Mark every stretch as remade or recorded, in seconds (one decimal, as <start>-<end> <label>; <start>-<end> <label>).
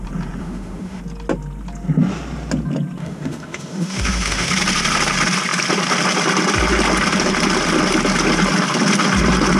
0.0-0.4 recorded; 0.4-1.0 remade; 1.0-3.0 recorded; 3.0-4.5 remade; 4.5-9.6 recorded